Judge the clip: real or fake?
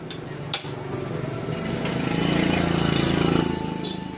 real